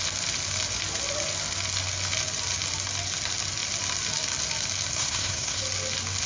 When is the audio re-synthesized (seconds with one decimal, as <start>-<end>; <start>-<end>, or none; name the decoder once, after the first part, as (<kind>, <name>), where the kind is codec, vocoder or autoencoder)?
4.9-5.6 (codec, SNAC)